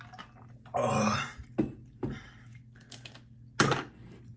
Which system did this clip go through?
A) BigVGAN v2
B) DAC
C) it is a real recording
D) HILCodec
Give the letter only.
C